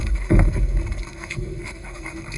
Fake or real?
fake